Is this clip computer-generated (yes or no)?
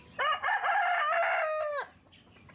no